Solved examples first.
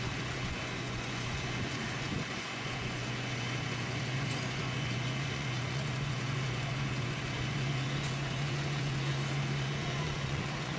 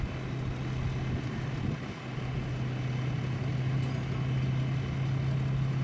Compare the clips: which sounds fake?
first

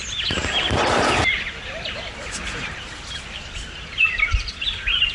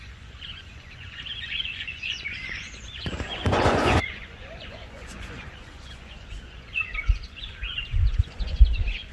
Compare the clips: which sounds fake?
second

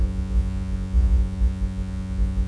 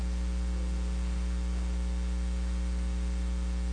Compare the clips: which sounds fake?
first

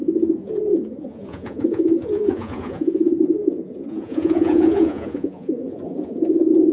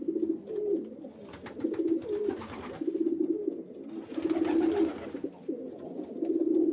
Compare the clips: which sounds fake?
first